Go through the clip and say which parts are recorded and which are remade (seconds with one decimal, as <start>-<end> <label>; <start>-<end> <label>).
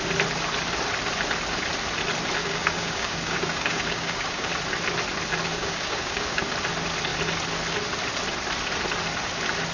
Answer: 0.0-2.4 recorded; 2.4-4.5 remade; 4.5-5.5 recorded; 5.5-6.5 remade; 6.5-9.7 recorded